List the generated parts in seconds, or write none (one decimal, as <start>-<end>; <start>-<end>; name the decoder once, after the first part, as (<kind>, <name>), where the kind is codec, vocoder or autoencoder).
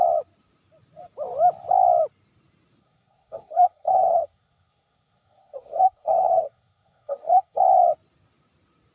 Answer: 2.8-7.6 (codec, SNAC)